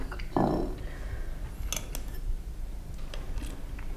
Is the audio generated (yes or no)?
no